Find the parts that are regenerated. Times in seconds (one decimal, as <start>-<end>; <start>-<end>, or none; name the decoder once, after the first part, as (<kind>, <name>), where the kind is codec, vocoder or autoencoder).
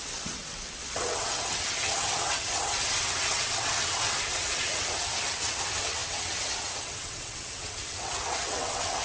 0.0-9.0 (vocoder, WaveNeXt)